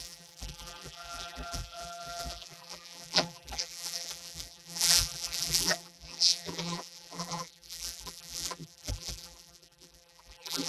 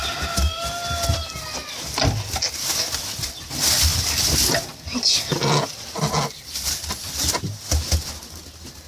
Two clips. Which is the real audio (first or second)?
second